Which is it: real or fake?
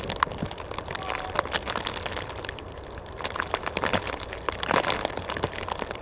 real